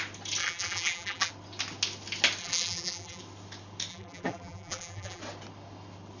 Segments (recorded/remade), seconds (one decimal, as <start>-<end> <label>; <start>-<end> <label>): 0.0-0.4 recorded; 0.4-1.3 remade; 1.3-2.4 recorded; 2.4-3.2 remade; 3.2-3.9 recorded; 3.9-5.2 remade; 5.2-6.2 recorded